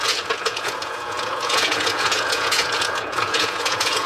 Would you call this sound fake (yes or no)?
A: yes